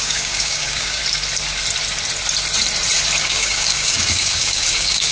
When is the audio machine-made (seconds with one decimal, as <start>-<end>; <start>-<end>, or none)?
0.0-1.0; 3.2-5.1